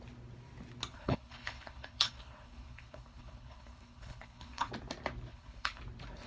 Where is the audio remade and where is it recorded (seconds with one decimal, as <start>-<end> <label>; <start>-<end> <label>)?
0.0-0.9 recorded; 0.9-4.7 remade; 4.7-5.3 recorded; 5.3-5.8 remade; 5.8-6.3 recorded